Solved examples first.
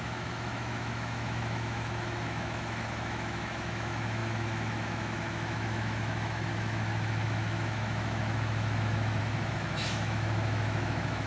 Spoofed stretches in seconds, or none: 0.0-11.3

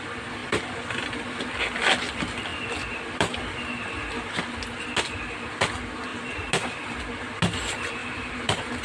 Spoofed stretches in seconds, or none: 8.0-8.8

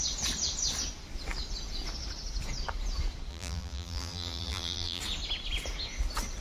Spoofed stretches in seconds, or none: 3.3-5.0

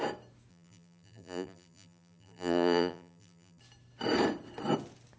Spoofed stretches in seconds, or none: 0.5-3.6

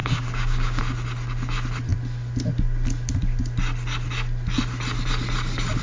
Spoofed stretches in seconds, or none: 0.0-0.8

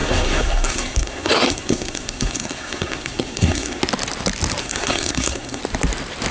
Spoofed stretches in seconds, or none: 0.0-3.8; 4.6-5.6